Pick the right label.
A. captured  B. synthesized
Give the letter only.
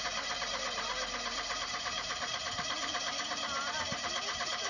A